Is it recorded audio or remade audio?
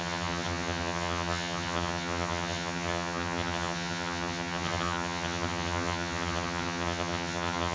remade